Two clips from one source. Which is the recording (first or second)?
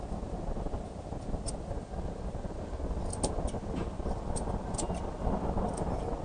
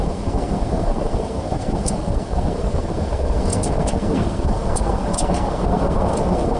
first